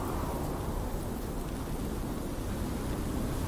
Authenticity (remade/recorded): recorded